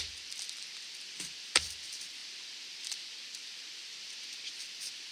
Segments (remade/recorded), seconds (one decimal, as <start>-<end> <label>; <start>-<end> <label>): 0.0-5.1 recorded